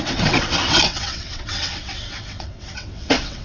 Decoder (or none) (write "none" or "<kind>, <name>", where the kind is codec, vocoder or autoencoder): vocoder, WaveNeXt